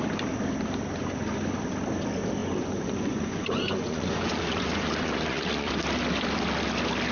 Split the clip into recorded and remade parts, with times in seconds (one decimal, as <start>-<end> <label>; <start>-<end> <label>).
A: 0.0-2.4 recorded; 2.4-5.7 remade; 5.7-7.1 recorded